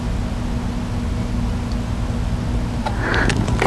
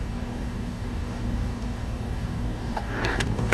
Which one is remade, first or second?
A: second